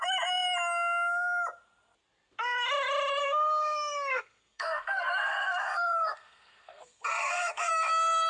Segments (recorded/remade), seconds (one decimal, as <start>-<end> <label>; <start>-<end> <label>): 0.0-3.2 recorded; 3.2-7.7 remade; 7.7-8.3 recorded